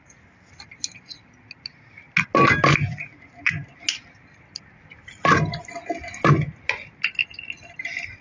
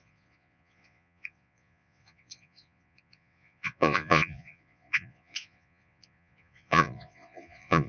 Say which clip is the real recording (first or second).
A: first